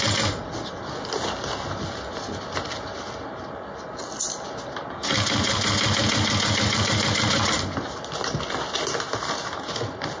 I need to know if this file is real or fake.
real